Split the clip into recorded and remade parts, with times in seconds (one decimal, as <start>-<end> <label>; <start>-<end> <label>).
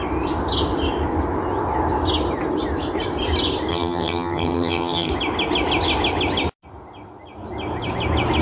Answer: 0.0-3.7 recorded; 3.7-5.1 remade; 5.1-8.4 recorded